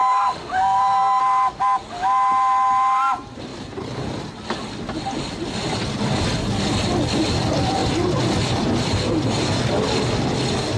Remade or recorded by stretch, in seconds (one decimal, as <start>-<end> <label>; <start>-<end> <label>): 0.0-1.2 remade; 1.2-10.8 recorded